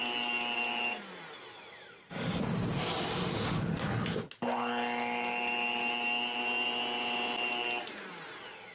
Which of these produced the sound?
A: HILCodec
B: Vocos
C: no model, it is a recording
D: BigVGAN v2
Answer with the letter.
C